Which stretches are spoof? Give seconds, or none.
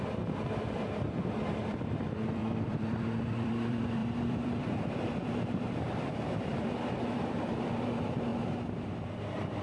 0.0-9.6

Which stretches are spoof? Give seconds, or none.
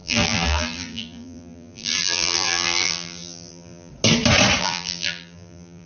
0.0-3.9; 4.6-5.9